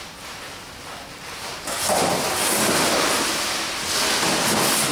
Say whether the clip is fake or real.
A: real